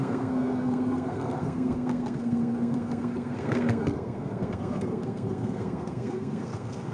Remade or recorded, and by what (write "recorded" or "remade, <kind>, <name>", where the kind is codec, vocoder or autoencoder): remade, codec, SNAC